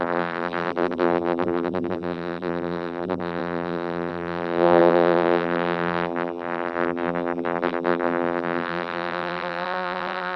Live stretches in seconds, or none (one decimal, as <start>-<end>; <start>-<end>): none